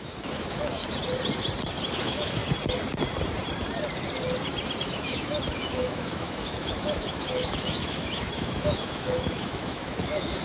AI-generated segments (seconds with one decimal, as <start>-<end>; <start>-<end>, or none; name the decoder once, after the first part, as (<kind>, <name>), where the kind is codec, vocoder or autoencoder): 0.0-0.8 (autoencoder, DAC-VAE); 2.0-2.4; 4.8-10.4